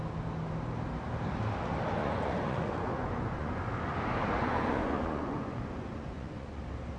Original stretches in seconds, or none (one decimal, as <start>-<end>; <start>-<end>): 0.0-2.0; 3.6-4.4; 6.6-7.0